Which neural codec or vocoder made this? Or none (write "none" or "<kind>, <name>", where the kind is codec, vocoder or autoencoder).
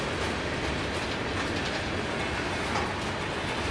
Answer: none